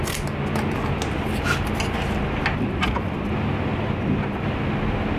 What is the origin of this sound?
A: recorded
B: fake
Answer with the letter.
A